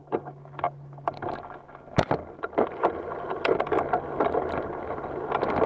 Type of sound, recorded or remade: recorded